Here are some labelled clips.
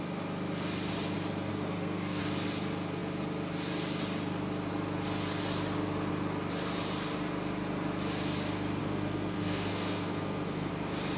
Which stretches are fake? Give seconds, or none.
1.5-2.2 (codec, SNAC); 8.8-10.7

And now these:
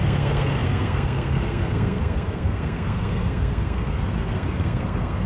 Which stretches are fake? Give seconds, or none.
0.0-5.3 (codec, SNAC)